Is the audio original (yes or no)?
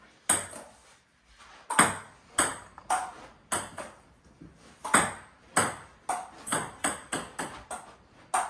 yes